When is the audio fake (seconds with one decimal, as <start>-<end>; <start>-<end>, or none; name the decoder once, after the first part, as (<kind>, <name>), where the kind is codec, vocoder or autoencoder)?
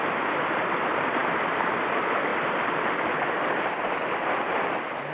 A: none